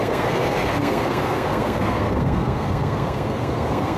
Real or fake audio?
fake